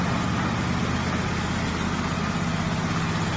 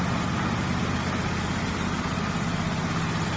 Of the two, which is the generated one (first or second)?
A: second